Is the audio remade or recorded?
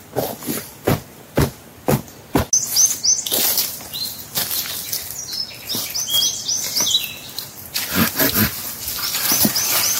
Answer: recorded